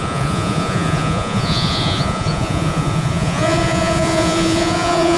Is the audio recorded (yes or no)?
no